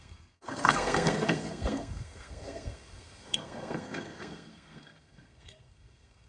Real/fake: fake